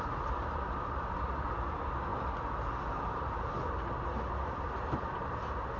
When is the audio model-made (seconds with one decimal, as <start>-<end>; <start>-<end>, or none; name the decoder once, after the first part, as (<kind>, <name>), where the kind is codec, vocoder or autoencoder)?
none